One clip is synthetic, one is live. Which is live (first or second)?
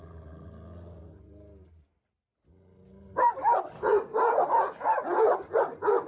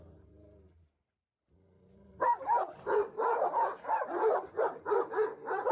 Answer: first